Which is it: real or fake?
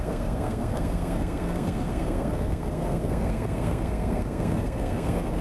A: fake